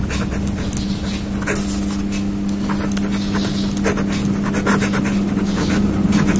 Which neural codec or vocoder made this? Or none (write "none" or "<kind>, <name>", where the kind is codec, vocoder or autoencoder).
none